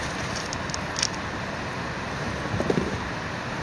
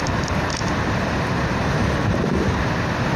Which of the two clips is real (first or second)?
first